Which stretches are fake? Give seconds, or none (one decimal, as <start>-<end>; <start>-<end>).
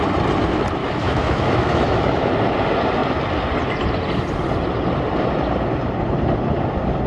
0.8-2.3